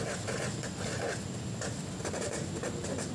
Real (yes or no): yes